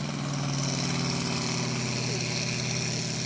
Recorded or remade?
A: recorded